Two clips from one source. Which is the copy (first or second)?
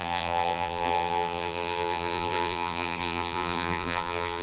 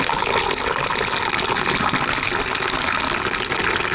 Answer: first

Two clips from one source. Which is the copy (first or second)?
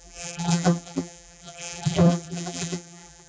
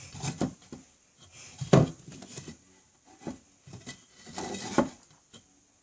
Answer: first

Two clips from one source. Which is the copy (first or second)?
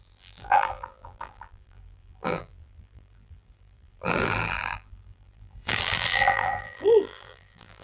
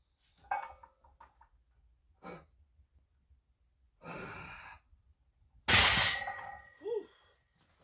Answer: first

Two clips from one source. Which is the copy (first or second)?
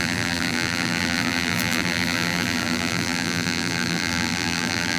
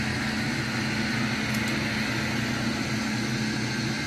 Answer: first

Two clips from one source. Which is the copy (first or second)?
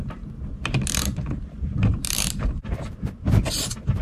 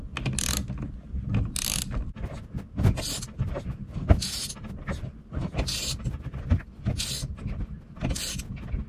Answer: first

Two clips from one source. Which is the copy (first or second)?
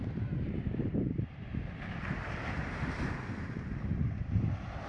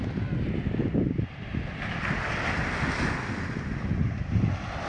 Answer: first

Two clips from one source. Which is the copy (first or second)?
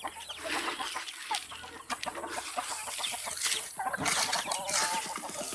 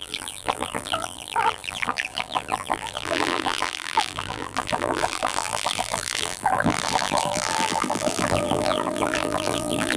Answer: second